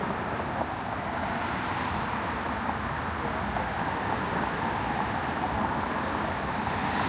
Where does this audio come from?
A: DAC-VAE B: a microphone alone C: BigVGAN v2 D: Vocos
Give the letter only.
B